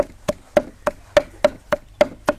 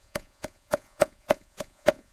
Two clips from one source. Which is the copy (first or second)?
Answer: second